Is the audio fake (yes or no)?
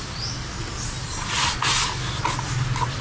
no